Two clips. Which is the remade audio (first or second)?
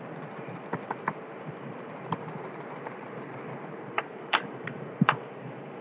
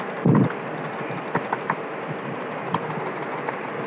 first